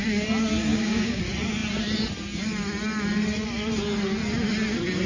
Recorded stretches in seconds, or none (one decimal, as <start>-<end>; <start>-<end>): 0.0-0.7; 1.2-5.1